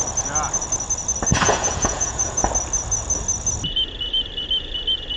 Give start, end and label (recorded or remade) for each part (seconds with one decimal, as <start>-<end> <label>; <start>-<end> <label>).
0.0-1.3 recorded; 1.3-2.5 remade; 2.5-5.2 recorded

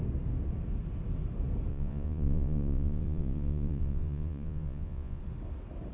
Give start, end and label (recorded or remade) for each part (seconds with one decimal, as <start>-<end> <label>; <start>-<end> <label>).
0.0-1.7 recorded; 1.7-5.2 remade; 5.2-5.9 recorded

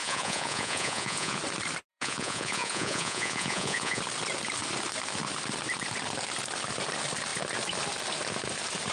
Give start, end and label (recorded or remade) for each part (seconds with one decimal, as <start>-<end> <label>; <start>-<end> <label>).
0.0-1.4 remade; 1.4-1.9 recorded; 1.9-4.0 remade; 4.0-8.9 recorded

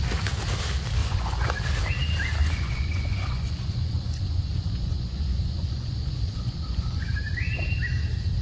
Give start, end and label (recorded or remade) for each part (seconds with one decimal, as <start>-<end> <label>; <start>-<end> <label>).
0.0-1.0 recorded; 1.0-1.5 remade; 1.5-2.4 recorded; 2.4-7.1 remade; 7.1-8.4 recorded

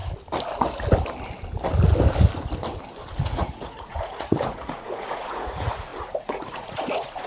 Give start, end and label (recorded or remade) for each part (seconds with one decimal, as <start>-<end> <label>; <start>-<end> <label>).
0.0-3.2 recorded; 3.2-7.3 remade

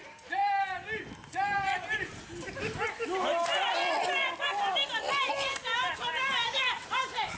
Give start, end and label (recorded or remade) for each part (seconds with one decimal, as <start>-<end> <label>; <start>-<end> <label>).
0.0-7.4 recorded

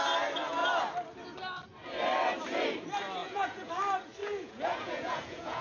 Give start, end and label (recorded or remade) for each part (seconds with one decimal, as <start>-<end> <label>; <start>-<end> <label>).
0.0-3.2 recorded; 3.2-3.7 remade; 3.7-4.2 recorded; 4.2-5.6 remade